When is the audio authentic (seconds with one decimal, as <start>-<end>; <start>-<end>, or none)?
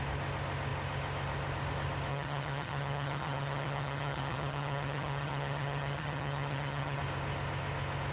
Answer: 0.0-2.1; 7.0-8.1